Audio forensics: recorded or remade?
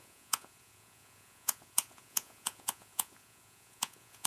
remade